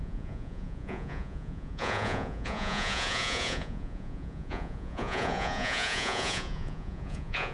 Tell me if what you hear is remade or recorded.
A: remade